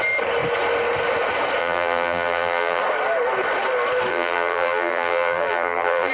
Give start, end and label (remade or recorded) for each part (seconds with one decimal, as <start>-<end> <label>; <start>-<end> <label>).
0.0-1.6 recorded; 1.6-2.8 remade; 2.8-4.1 recorded; 4.1-6.1 remade